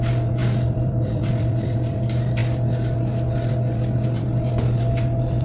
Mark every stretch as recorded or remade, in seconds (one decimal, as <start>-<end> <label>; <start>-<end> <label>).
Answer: 0.0-0.4 recorded; 0.4-2.0 remade; 2.0-5.4 recorded